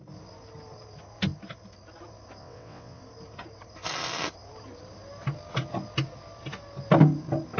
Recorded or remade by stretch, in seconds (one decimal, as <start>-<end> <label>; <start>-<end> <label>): 0.0-2.4 recorded; 2.4-3.0 remade; 3.0-7.6 recorded